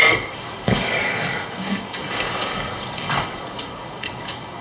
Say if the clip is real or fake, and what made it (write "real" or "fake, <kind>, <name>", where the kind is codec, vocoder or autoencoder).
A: fake, codec, DAC